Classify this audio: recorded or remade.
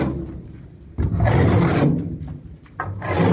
recorded